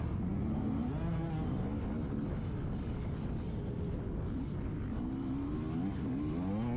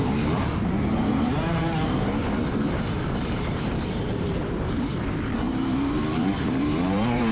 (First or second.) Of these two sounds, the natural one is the first